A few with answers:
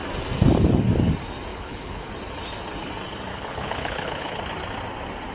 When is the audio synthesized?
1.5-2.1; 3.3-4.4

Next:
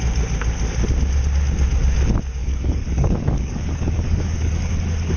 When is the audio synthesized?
2.4-4.7